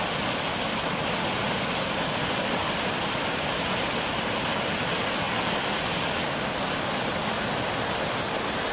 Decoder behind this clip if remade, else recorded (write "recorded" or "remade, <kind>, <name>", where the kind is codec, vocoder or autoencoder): recorded